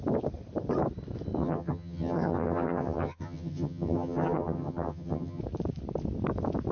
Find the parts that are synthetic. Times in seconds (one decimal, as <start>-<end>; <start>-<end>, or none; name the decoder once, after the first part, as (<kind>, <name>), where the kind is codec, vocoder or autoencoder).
1.4-5.4 (vocoder, HiFi-GAN)